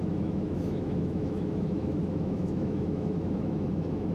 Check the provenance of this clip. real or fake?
fake